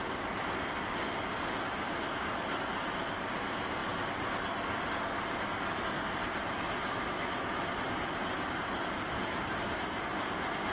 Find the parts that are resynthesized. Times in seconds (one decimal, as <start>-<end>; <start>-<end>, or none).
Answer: 6.8-7.7